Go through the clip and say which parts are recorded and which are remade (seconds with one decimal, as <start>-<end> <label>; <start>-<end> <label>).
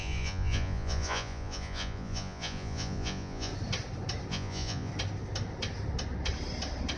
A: 0.0-3.5 remade; 3.5-4.3 recorded; 4.3-4.9 remade; 4.9-7.0 recorded